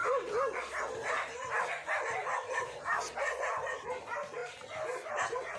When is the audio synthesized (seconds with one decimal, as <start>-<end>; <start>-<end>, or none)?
none

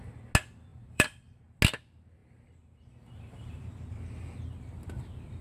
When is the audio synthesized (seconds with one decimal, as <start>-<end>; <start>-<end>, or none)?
0.7-1.4

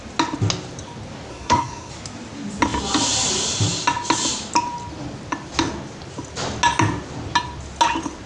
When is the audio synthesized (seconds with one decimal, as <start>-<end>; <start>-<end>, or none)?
1.3-1.9